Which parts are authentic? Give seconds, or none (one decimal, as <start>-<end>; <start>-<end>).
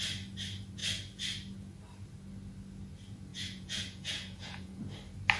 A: 0.0-3.3; 4.8-5.4